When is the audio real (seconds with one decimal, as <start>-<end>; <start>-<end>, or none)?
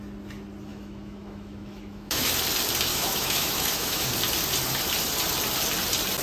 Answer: 0.0-0.7; 2.3-2.9; 4.1-6.2